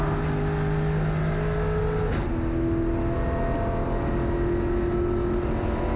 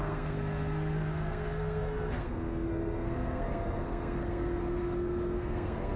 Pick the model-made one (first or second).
second